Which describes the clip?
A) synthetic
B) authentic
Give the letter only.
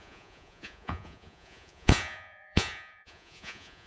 A